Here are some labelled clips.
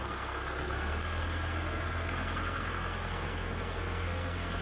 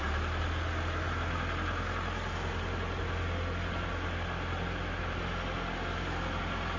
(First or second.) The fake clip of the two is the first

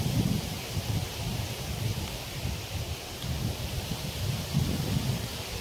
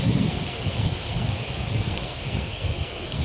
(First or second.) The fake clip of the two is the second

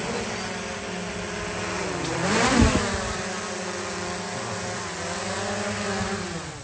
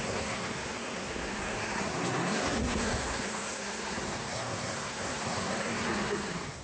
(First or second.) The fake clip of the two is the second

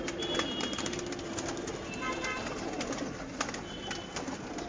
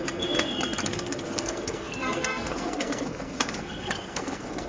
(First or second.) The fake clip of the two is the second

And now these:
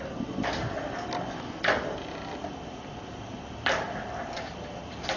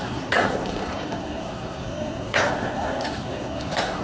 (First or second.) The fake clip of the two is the second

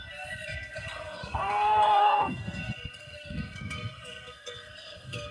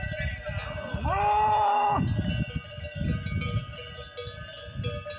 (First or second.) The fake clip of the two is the first